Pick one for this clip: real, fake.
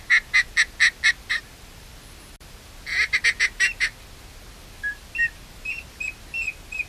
real